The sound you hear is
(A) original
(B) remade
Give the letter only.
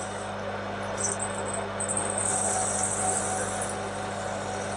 A